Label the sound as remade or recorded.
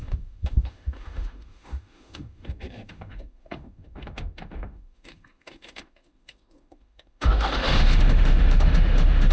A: remade